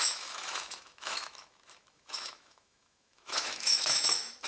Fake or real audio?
fake